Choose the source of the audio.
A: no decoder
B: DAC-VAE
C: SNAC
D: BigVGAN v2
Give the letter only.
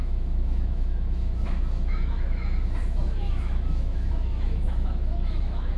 B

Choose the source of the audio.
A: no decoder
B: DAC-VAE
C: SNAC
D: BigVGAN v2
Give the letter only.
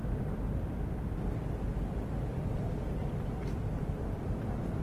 A